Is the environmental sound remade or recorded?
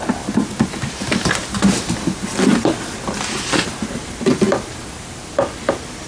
recorded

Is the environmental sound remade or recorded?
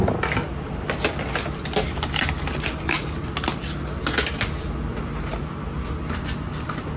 recorded